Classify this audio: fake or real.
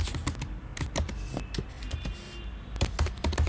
real